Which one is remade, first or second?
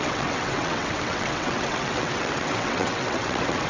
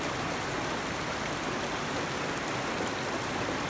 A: first